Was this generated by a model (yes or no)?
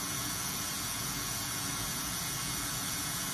yes